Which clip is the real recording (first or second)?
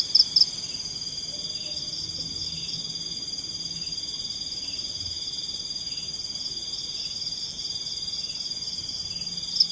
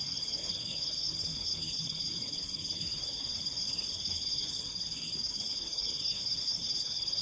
first